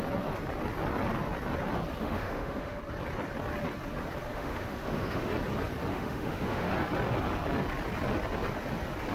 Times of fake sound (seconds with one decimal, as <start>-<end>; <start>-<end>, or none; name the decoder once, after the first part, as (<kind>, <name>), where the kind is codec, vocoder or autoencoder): 2.0-2.8 (autoencoder, DAC-VAE); 4.3-5.3; 5.9-6.7